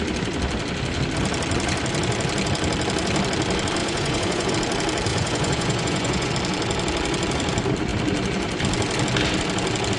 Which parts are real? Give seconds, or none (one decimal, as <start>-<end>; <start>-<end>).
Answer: 0.0-3.8; 4.5-5.1; 6.3-10.0